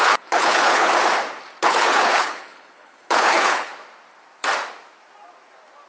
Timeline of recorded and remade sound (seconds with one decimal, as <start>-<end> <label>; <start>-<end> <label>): 0.0-0.9 remade; 0.9-1.6 recorded; 1.6-3.7 remade; 3.7-5.9 recorded